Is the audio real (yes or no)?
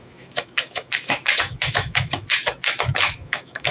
no